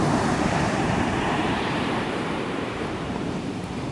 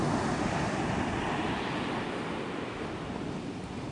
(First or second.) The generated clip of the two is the first